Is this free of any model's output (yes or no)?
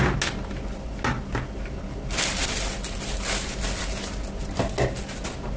yes